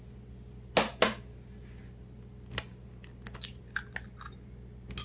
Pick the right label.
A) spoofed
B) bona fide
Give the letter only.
B